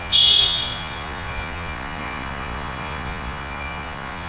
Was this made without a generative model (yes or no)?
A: no